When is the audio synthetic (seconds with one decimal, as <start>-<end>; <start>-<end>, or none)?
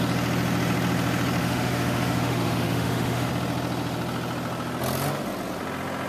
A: 1.4-3.3